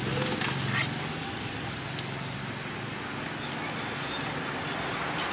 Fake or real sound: real